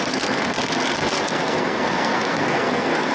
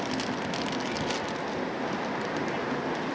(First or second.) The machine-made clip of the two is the first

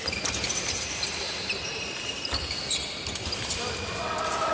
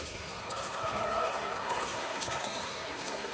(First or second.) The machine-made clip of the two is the second